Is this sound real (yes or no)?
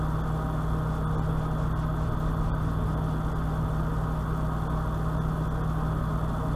yes